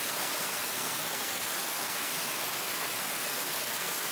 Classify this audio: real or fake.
fake